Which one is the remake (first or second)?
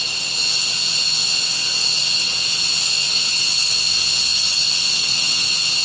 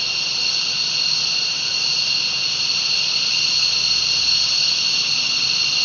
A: first